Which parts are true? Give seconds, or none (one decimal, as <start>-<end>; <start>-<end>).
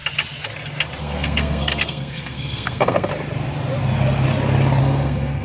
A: 0.0-1.0; 3.1-4.8